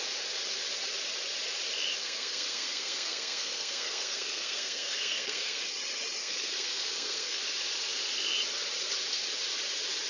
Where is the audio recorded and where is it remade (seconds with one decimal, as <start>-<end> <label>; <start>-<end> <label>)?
0.0-2.0 recorded; 2.0-5.6 remade; 5.6-6.2 recorded; 6.2-7.4 remade; 7.4-10.1 recorded